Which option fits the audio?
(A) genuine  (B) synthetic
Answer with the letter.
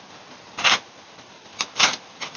A